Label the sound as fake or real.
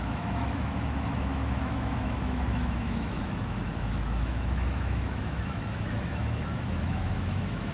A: fake